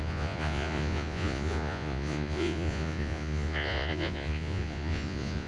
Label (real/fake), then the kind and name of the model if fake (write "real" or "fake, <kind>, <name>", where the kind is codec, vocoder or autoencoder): fake, vocoder, Vocos